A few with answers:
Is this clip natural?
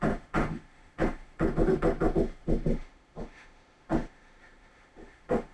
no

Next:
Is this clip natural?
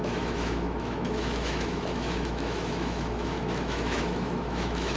no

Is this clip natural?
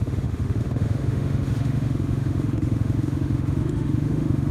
no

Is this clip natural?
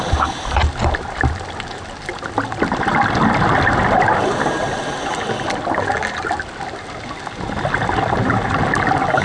yes